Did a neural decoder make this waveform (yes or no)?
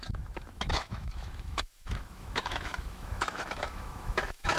yes